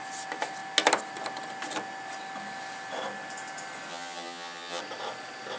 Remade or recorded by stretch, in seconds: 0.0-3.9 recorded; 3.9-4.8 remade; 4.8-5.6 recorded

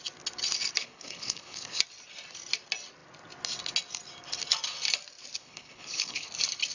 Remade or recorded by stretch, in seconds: 0.0-0.8 recorded; 0.8-1.8 remade; 1.8-5.4 recorded; 5.4-6.3 remade; 6.3-6.7 recorded

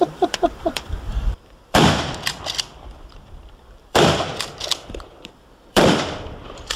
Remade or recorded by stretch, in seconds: 0.0-6.8 remade

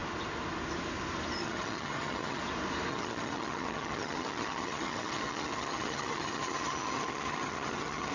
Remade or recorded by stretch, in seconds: 0.0-1.4 recorded; 1.4-2.4 remade; 2.4-2.9 recorded; 2.9-8.1 remade

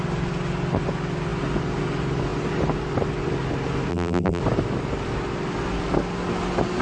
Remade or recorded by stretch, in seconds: 0.0-3.9 recorded; 3.9-4.4 remade; 4.4-6.8 recorded

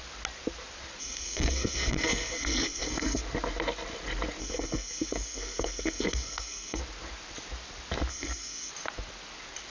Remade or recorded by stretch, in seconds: 0.0-1.0 recorded; 1.0-3.2 remade; 3.2-4.4 recorded; 4.4-6.8 remade; 6.8-8.1 recorded; 8.1-8.7 remade; 8.7-9.7 recorded

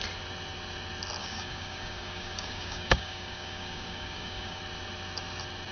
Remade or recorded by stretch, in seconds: 0.0-1.2 recorded; 1.2-4.6 remade; 4.6-5.7 recorded

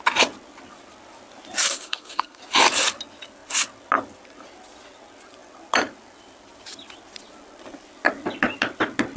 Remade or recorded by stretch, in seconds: 0.0-1.7 recorded; 1.7-2.4 remade; 2.4-9.2 recorded